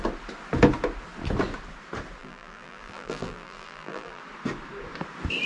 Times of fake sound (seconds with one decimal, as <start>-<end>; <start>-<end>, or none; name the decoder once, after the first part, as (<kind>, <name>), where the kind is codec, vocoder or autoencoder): 2.2-4.2 (vocoder, BigVGAN v2)